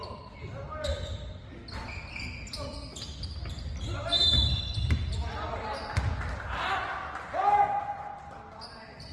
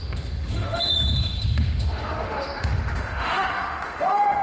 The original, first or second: first